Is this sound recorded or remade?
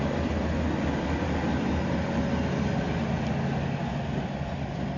recorded